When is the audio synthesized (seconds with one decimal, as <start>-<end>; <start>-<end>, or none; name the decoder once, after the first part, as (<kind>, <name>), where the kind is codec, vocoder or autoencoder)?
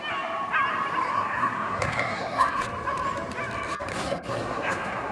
1.1-2.6 (codec, SNAC); 3.9-5.1